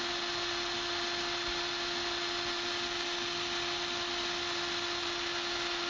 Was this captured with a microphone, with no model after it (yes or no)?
yes